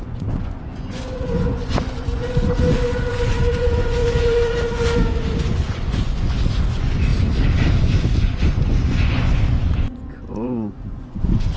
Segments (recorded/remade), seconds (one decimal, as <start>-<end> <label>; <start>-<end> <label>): 0.0-7.1 remade; 7.1-7.8 recorded; 7.8-11.6 remade